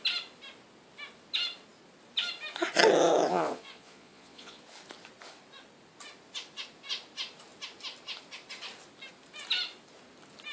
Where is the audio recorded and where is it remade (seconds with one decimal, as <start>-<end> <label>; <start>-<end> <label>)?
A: 0.0-3.3 recorded; 3.3-4.6 remade; 4.6-10.5 recorded